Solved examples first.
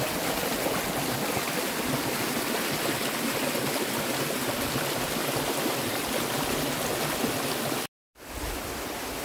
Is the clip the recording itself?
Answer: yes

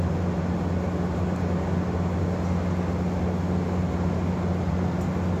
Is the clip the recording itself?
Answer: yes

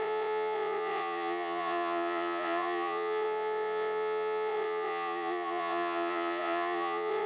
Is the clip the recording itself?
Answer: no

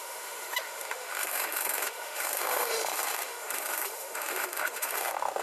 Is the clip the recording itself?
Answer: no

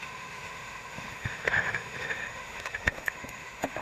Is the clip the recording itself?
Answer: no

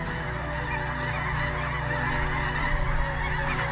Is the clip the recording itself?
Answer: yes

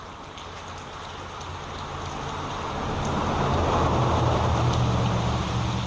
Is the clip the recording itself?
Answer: yes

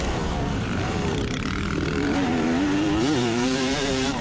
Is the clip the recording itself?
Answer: no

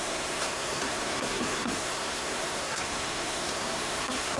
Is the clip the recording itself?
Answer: no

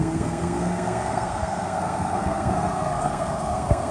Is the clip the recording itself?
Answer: no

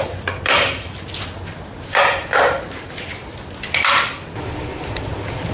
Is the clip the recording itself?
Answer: yes